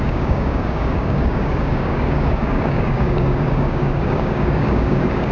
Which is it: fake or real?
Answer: fake